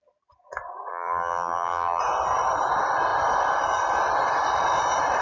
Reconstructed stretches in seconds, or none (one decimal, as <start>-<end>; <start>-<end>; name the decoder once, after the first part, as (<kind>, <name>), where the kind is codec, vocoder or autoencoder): 0.9-2.0 (vocoder, BigVGAN v2)